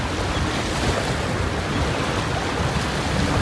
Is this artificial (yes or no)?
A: no